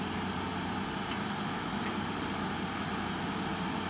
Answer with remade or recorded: recorded